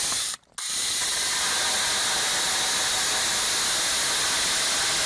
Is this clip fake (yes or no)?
no